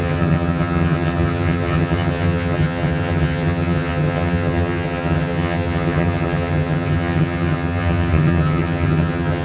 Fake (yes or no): yes